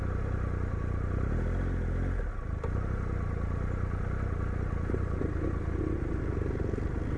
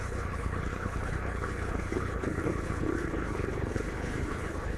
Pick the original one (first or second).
first